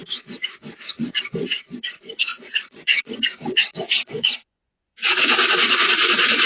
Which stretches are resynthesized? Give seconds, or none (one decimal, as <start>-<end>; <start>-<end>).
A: 0.0-0.7; 2.3-5.0